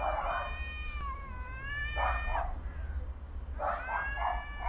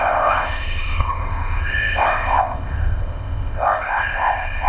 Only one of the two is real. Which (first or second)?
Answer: first